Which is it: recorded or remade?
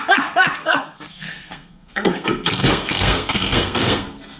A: remade